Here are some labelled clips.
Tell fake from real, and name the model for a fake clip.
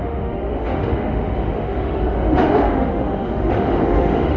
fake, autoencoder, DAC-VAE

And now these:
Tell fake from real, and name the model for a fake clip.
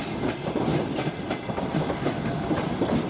real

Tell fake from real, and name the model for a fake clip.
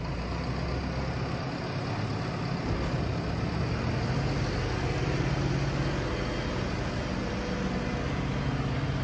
real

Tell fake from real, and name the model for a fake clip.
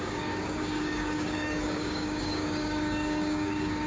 fake, codec, DAC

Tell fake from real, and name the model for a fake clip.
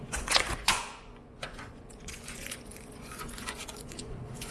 fake, vocoder, Vocos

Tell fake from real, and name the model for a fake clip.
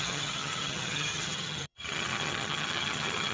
fake, vocoder, HiFi-GAN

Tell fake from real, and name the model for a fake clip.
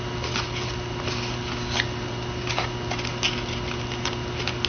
real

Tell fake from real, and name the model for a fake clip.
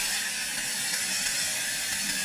real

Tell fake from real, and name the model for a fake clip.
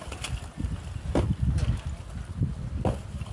real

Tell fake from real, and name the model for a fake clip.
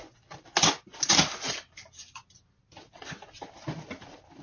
real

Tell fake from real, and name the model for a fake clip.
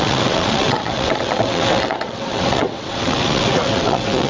fake, vocoder, WaveNeXt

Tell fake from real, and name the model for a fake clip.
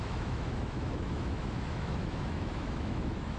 fake, autoencoder, DAC-VAE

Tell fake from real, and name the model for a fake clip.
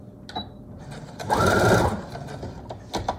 real